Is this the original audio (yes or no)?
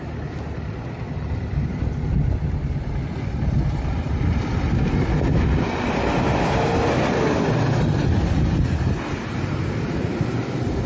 yes